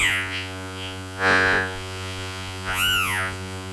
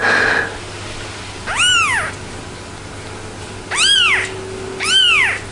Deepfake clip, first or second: first